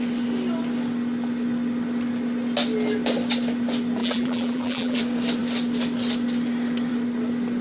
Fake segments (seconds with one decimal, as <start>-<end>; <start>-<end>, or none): 4.0-5.0